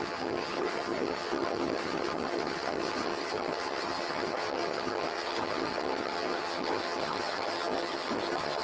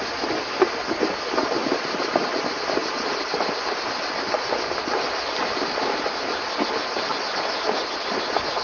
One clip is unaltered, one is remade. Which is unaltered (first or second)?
second